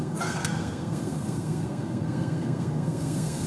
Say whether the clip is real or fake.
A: fake